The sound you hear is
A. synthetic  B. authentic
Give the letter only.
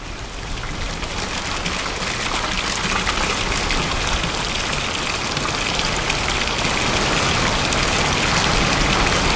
B